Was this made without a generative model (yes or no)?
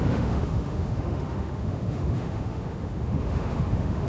no